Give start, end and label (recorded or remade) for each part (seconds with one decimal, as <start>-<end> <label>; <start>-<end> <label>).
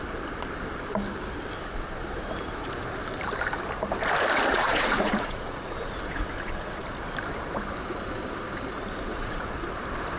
0.0-4.5 recorded; 4.5-6.8 remade; 6.8-9.1 recorded; 9.1-9.6 remade; 9.6-10.2 recorded